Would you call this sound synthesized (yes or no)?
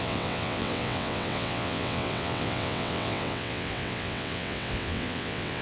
yes